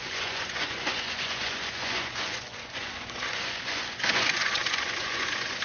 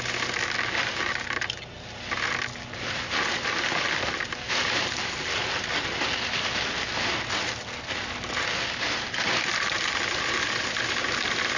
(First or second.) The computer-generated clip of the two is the first